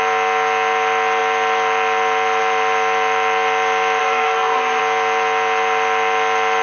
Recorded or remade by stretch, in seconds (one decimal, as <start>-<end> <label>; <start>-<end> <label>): 0.0-4.0 recorded; 4.0-4.8 remade; 4.8-6.6 recorded